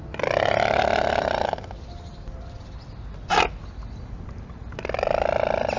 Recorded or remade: recorded